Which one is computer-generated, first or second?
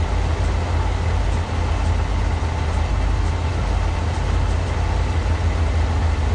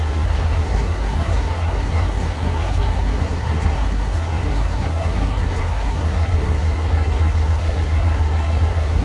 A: second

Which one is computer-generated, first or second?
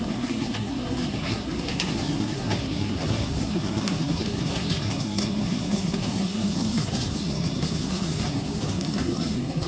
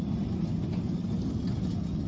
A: first